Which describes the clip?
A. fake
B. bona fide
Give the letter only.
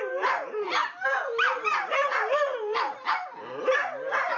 A